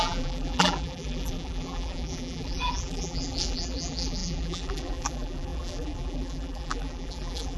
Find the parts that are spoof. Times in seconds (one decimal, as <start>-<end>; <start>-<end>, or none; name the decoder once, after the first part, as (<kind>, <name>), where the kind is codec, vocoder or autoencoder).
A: 0.0-7.6 (vocoder, BigVGAN v2)